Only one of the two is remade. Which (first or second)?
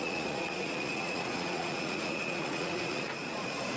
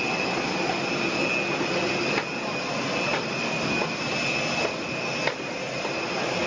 first